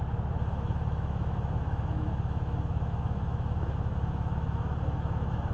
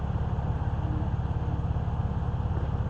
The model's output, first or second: first